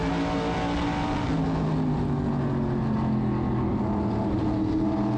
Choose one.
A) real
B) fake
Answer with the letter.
A